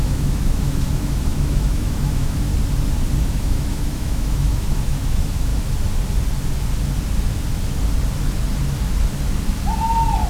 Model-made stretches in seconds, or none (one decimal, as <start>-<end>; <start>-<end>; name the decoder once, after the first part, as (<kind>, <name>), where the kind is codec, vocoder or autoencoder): 0.0-2.5 (autoencoder, DAC-VAE); 3.2-5.5